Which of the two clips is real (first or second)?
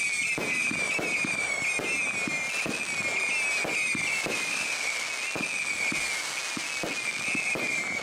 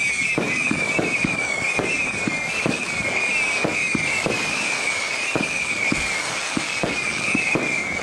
first